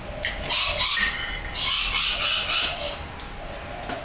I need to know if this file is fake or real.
real